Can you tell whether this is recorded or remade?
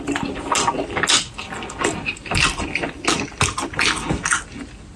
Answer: recorded